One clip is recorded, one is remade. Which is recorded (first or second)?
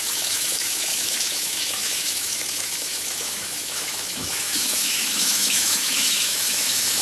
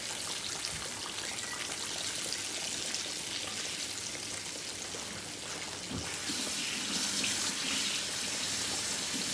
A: second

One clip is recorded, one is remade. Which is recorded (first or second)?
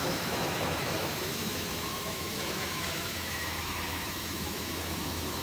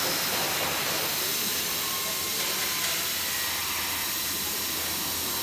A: second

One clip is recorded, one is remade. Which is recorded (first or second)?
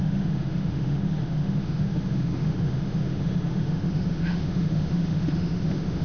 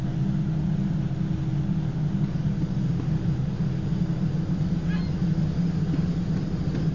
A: second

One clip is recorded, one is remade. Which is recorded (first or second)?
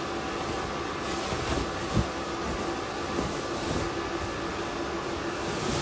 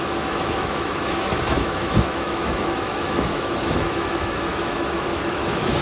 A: first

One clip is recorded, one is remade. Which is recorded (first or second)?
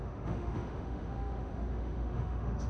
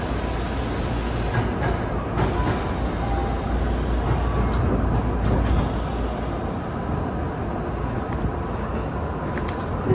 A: second